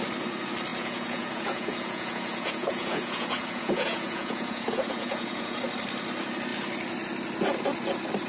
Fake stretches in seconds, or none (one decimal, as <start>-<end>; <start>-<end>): 0.7-5.6